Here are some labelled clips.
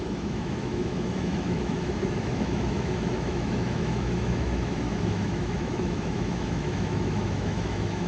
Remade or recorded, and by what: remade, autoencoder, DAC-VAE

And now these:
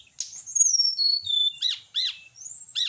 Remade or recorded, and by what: recorded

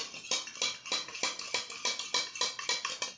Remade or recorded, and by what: recorded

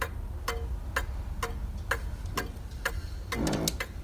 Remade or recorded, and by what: recorded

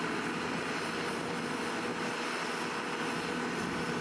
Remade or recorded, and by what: recorded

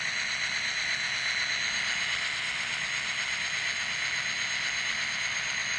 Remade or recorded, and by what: recorded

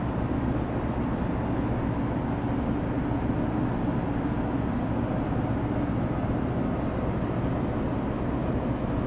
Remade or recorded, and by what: recorded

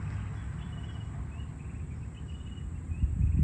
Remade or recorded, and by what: recorded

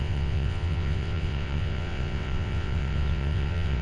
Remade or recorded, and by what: remade, vocoder, WaveNeXt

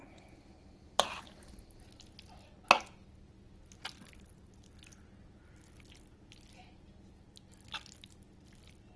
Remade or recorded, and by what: recorded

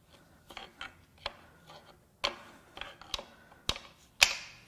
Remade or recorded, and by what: recorded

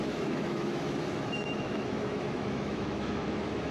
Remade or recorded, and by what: remade, autoencoder, DAC-VAE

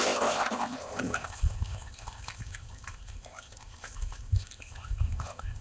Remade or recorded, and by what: remade, codec, ZipCodec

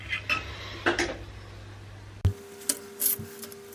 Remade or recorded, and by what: recorded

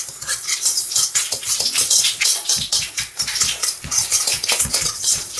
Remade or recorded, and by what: remade, vocoder, Vocos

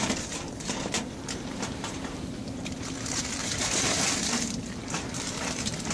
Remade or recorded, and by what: remade, vocoder, BigVGAN v2